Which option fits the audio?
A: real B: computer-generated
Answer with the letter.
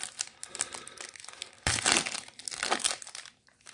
A